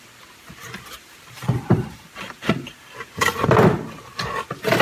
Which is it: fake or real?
fake